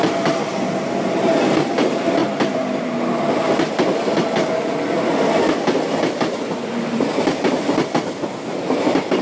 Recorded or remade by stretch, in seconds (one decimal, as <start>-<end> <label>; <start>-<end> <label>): 0.0-9.2 recorded